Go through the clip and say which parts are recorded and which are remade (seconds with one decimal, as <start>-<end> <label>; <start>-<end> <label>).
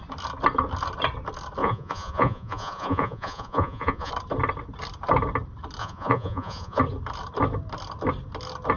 0.0-1.6 recorded; 1.6-4.1 remade; 4.1-5.8 recorded; 5.8-6.8 remade; 6.8-8.8 recorded